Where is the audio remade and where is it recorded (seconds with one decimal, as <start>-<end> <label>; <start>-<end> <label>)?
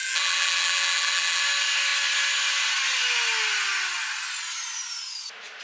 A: 0.0-1.4 remade; 1.4-5.6 recorded